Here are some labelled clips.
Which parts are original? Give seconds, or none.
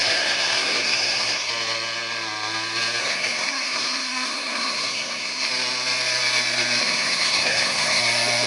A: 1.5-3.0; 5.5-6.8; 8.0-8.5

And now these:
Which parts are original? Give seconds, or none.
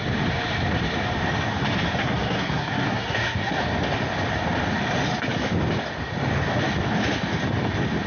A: 0.0-2.0; 3.6-8.1